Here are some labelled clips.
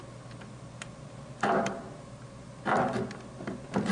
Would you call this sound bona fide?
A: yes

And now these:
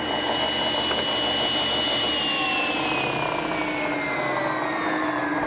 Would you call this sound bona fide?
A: yes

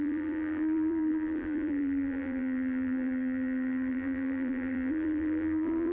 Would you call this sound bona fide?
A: no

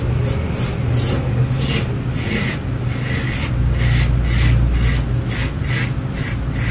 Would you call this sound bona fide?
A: yes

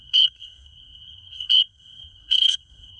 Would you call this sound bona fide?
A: no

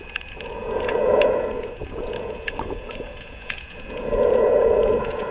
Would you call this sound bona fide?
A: no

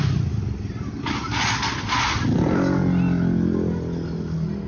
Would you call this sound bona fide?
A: yes